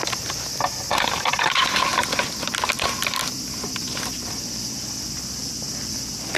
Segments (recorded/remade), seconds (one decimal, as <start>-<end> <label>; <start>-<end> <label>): 0.0-6.4 recorded